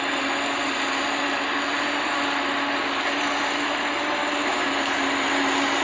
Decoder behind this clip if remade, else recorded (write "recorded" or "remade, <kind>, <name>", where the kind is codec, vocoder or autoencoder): recorded